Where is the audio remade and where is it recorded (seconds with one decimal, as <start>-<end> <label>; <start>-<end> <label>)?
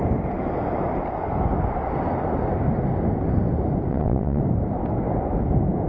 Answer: 0.0-3.9 recorded; 3.9-4.4 remade; 4.4-5.9 recorded